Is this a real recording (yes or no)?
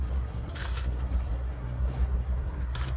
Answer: no